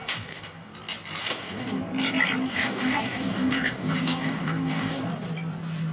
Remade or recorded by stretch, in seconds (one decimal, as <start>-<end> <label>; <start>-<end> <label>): 0.0-0.7 remade; 0.7-1.2 recorded; 1.2-1.8 remade; 1.8-2.5 recorded; 2.5-5.0 remade; 5.0-5.9 recorded